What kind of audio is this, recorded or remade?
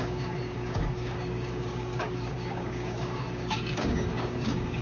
remade